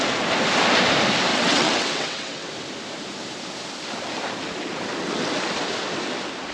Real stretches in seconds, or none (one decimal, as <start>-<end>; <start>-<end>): 0.0-1.3; 2.5-6.5